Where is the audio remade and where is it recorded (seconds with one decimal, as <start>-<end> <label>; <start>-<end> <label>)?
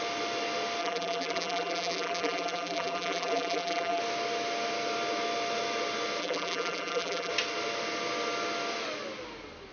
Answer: 0.0-0.8 recorded; 0.8-4.0 remade; 4.0-6.2 recorded; 6.2-7.3 remade; 7.3-9.7 recorded